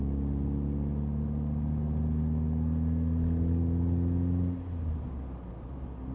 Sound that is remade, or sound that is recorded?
recorded